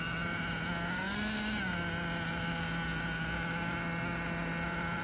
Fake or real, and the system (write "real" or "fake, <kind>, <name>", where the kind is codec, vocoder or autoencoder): real